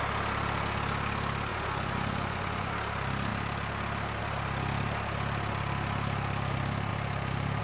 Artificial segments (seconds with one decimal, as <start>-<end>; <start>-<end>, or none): 1.5-2.7